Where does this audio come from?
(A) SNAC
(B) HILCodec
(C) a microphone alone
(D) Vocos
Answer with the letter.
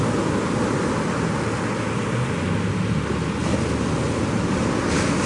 C